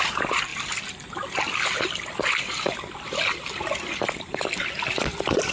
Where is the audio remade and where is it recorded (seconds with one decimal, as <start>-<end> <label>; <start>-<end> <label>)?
0.0-0.5 remade; 0.5-2.9 recorded; 2.9-5.5 remade